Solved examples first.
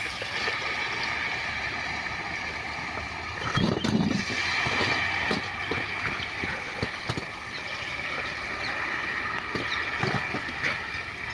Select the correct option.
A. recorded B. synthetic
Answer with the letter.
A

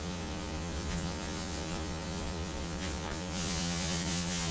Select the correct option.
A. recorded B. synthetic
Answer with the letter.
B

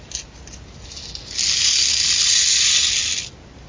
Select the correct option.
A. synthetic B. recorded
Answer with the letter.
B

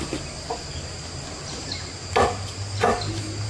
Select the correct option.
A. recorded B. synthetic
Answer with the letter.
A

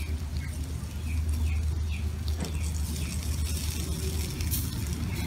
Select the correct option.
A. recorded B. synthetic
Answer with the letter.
A